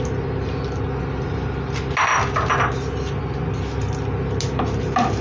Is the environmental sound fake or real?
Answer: real